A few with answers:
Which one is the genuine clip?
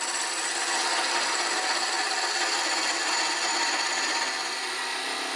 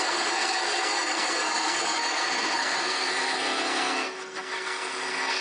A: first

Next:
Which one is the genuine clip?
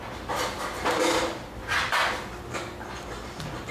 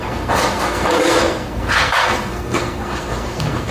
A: first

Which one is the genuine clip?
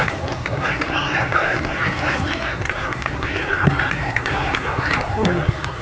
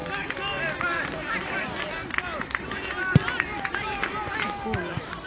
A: second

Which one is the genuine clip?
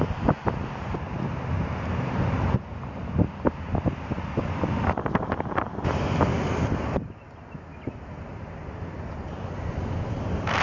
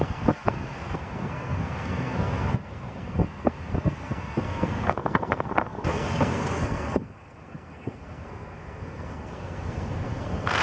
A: first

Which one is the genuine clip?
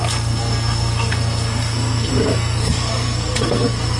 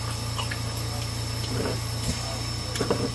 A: second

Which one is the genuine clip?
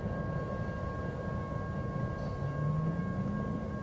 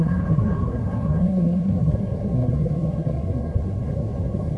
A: first